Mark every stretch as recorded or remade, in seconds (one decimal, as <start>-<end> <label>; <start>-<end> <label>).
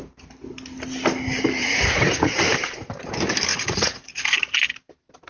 0.0-1.6 recorded; 1.6-2.4 remade; 2.4-3.5 recorded; 3.5-4.2 remade; 4.2-5.3 recorded